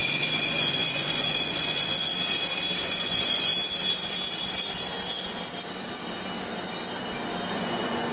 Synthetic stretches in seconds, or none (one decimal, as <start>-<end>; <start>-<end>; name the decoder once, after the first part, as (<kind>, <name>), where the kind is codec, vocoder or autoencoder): 0.0-2.1 (vocoder, Vocos); 2.8-3.5; 7.5-8.1